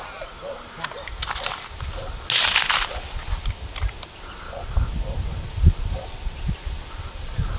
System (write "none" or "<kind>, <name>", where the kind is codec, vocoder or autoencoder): none